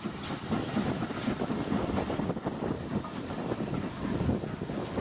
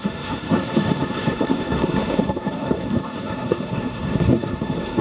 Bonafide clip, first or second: first